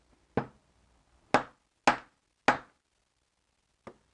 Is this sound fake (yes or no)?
no